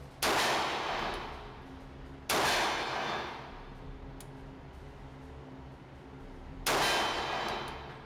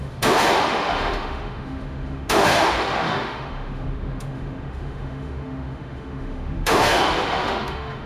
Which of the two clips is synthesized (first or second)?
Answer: second